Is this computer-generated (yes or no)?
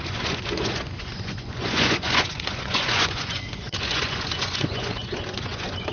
yes